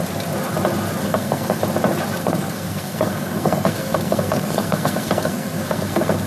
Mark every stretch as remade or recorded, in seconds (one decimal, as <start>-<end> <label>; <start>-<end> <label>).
0.0-1.0 recorded; 1.0-1.6 remade; 1.6-2.2 recorded; 2.2-6.3 remade